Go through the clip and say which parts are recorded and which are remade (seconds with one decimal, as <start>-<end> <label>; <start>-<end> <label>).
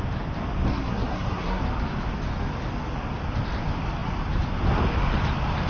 0.0-0.7 recorded; 0.7-1.6 remade; 1.6-5.7 recorded